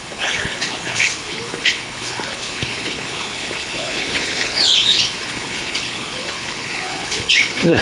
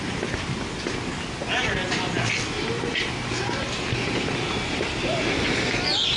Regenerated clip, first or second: first